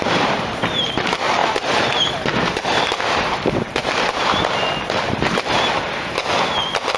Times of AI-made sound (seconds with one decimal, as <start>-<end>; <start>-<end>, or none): 0.0-7.0